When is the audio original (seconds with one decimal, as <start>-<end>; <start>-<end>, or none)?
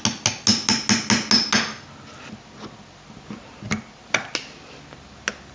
0.0-5.5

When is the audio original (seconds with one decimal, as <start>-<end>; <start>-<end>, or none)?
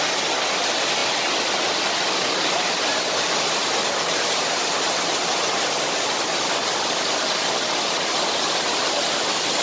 0.0-9.6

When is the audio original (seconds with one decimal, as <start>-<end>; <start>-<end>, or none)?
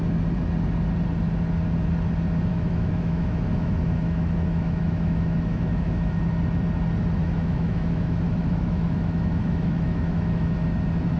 0.0-2.5; 6.2-7.2; 10.5-11.2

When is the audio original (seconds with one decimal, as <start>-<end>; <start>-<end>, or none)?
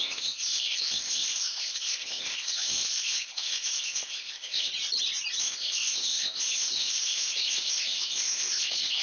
4.7-5.4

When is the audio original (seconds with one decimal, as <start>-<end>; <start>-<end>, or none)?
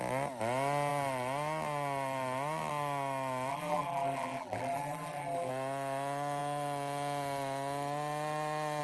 0.0-3.5; 5.5-8.8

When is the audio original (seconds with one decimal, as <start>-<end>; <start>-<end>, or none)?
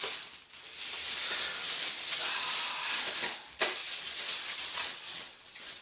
0.0-3.8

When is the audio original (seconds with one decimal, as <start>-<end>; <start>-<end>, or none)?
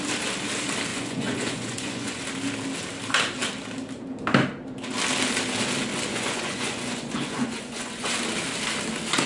0.0-0.9; 2.2-6.1; 8.1-9.3